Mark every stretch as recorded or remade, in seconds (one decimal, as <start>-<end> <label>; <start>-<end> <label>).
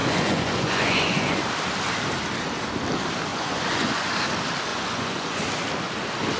0.0-1.4 remade; 1.4-3.3 recorded; 3.3-4.1 remade; 4.1-4.7 recorded; 4.7-5.4 remade; 5.4-6.4 recorded